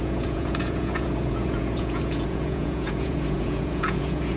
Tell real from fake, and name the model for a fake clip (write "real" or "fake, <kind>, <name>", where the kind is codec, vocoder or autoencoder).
fake, vocoder, Vocos